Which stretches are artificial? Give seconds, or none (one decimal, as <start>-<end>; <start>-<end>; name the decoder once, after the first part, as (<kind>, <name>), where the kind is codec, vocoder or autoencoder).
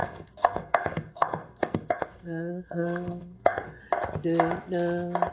0.0-3.8 (codec, SNAC)